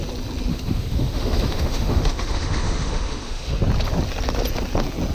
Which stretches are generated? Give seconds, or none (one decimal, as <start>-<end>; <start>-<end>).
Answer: 0.5-3.6